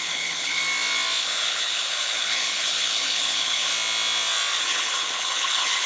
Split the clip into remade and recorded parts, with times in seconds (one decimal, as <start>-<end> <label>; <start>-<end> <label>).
0.0-0.6 remade; 0.6-1.2 recorded; 1.2-3.7 remade; 3.7-4.6 recorded; 4.6-5.9 remade